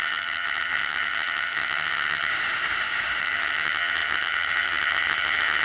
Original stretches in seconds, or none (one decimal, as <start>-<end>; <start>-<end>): 2.3-3.2